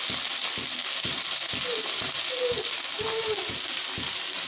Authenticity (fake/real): real